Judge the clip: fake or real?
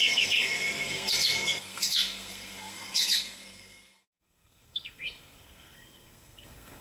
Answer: fake